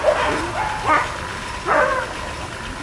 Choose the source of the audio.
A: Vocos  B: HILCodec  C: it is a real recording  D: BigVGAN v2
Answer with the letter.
C